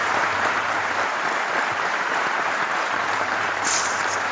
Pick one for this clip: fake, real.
fake